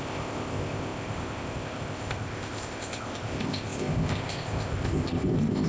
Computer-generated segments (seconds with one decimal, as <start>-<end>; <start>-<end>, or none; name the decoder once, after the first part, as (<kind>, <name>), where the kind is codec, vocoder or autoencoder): 0.0-5.7 (codec, ZipCodec)